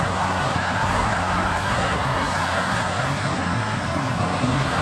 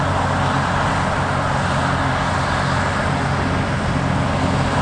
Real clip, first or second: second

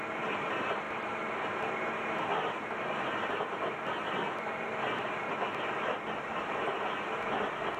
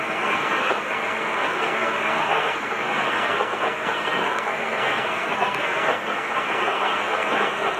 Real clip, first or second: first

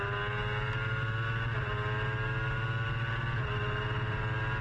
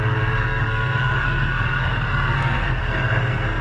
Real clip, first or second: first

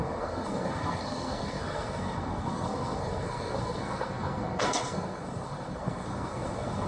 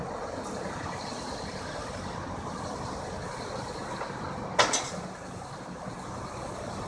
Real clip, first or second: second